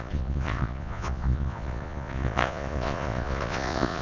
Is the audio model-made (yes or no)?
yes